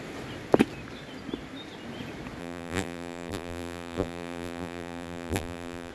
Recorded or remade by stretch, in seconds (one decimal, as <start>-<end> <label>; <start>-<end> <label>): 0.0-2.4 recorded; 2.4-5.9 remade